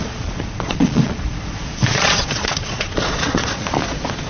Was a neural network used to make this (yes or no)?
yes